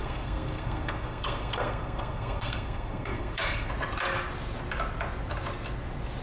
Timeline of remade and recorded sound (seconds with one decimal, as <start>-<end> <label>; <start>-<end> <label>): 0.0-3.7 remade; 3.7-6.2 recorded